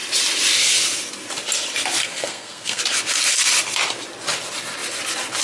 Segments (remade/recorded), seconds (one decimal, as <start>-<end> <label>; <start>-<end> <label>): 0.0-2.0 recorded; 2.0-2.8 remade; 2.8-5.4 recorded